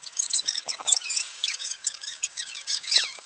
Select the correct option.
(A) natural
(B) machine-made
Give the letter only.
B